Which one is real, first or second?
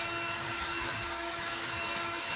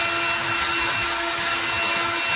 second